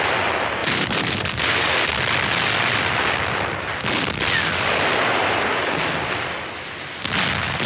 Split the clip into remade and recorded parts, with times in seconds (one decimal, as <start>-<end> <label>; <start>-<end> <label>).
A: 0.0-0.6 recorded; 0.6-1.7 remade; 1.7-5.1 recorded; 5.1-5.7 remade; 5.7-7.7 recorded